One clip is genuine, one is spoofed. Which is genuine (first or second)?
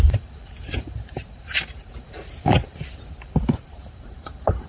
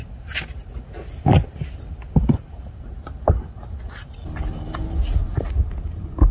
second